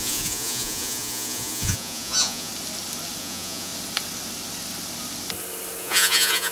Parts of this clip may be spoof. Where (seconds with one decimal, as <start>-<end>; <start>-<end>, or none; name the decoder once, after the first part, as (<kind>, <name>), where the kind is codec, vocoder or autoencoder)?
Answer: 0.0-2.5 (vocoder, Vocos); 3.2-3.7; 5.8-6.5